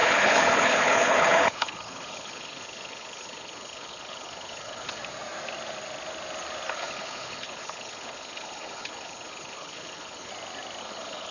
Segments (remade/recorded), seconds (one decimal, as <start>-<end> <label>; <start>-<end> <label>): 0.0-5.0 remade; 5.0-6.7 recorded; 6.7-10.3 remade; 10.3-10.8 recorded; 10.8-11.3 remade